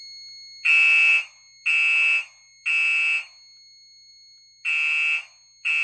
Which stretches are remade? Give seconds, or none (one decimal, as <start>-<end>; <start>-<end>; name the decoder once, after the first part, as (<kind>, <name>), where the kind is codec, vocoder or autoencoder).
none